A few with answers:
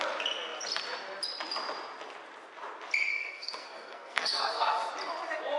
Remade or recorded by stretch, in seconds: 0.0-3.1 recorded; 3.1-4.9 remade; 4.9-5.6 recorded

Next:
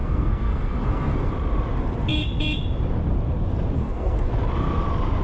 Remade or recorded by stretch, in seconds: 0.0-1.3 remade; 1.3-3.8 recorded; 3.8-4.3 remade; 4.3-5.2 recorded

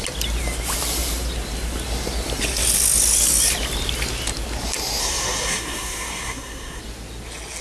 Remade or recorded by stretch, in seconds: 0.0-5.0 recorded; 5.0-6.8 remade; 6.8-7.6 recorded